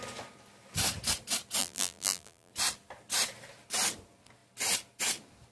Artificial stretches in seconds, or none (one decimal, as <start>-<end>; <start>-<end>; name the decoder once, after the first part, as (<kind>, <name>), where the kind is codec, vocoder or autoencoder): 1.6-2.5 (vocoder, BigVGAN v2)